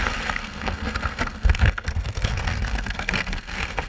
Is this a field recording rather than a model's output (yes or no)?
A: no